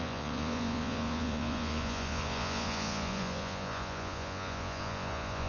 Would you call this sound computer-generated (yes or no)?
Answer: yes